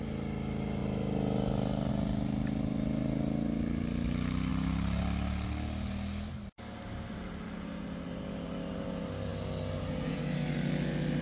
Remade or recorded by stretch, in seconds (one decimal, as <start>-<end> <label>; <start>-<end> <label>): 0.0-11.2 recorded